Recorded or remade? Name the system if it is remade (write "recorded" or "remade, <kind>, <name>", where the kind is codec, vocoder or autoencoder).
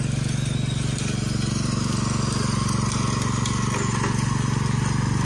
recorded